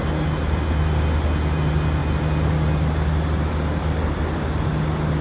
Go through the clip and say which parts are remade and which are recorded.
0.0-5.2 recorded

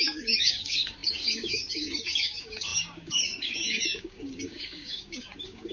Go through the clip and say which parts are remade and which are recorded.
0.0-5.7 remade

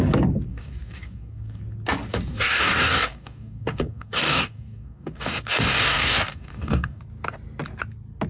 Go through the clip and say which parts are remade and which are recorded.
0.0-0.5 recorded; 0.5-1.6 remade; 1.6-2.1 recorded; 2.1-7.0 remade; 7.0-8.3 recorded

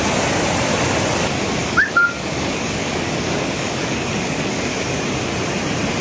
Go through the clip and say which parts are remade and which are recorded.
0.0-1.6 recorded; 1.6-5.0 remade; 5.0-6.0 recorded

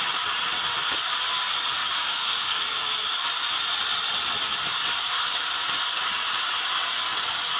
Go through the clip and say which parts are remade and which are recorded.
0.0-1.8 recorded; 1.8-2.9 remade; 2.9-7.6 recorded

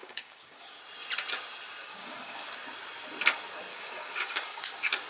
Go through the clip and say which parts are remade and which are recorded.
0.0-0.8 remade; 0.8-1.8 recorded; 1.8-2.5 remade; 2.5-3.7 recorded; 3.7-4.6 remade; 4.6-5.1 recorded